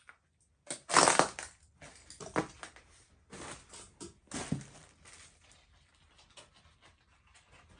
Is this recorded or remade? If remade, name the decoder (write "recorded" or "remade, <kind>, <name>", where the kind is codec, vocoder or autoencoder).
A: recorded